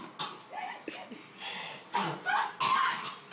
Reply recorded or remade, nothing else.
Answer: recorded